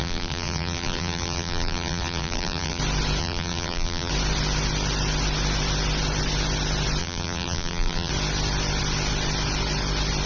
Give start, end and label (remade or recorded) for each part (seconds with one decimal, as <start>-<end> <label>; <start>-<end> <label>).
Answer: 0.0-2.8 remade; 2.8-3.2 recorded; 3.2-4.1 remade; 4.1-7.0 recorded; 7.0-8.1 remade; 8.1-10.3 recorded